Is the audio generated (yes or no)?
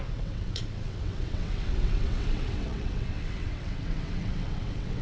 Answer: yes